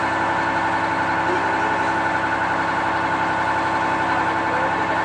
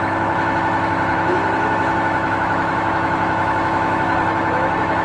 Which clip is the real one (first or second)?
first